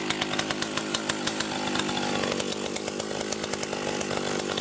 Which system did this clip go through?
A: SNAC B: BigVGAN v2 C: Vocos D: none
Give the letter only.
D